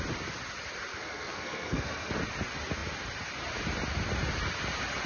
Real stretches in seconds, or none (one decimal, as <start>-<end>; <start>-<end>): 0.0-0.9; 2.1-5.1